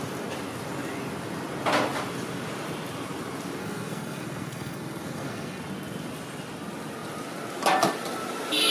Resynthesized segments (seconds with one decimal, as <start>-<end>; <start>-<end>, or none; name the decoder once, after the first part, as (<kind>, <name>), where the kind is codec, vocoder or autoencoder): 3.6-5.6 (codec, SNAC)